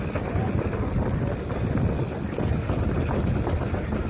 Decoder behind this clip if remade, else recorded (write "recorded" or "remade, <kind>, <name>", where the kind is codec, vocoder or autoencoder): recorded